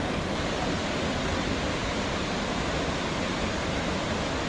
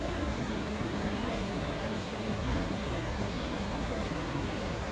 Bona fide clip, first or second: first